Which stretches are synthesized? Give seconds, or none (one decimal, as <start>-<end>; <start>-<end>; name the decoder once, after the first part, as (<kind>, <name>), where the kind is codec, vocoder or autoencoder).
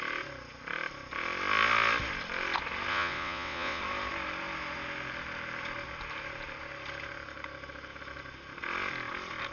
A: 2.9-3.8 (vocoder, WaveNeXt)